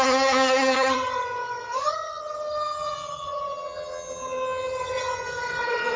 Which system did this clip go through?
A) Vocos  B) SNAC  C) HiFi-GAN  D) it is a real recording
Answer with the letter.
C